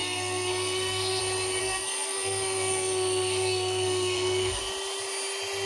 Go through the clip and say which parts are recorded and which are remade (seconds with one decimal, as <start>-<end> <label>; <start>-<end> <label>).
0.0-1.2 remade; 1.2-1.6 recorded; 1.6-4.6 remade; 4.6-5.7 recorded